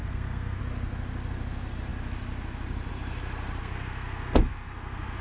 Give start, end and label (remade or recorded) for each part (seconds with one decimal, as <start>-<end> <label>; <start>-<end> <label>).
0.0-0.6 remade; 0.6-3.6 recorded; 3.6-5.2 remade